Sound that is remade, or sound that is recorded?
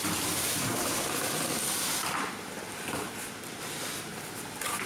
remade